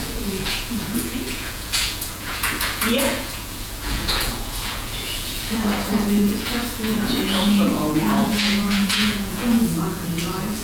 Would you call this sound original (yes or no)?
no